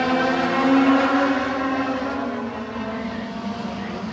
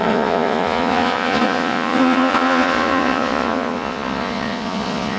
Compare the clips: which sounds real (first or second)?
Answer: first